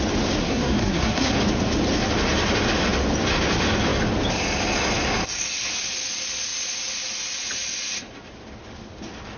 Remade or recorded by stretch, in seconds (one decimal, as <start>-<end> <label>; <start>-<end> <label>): 0.0-0.4 recorded; 0.4-1.3 remade; 1.3-9.4 recorded